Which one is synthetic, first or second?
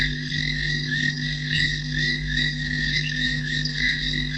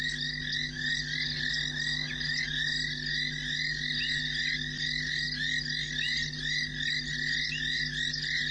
first